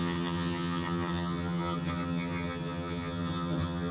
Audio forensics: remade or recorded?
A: remade